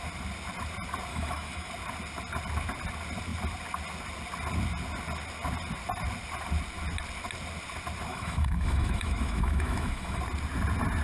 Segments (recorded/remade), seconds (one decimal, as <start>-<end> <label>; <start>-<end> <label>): 0.0-1.1 recorded; 1.1-1.7 remade; 1.7-8.1 recorded; 8.1-10.2 remade; 10.2-11.0 recorded